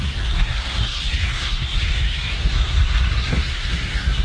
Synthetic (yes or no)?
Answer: yes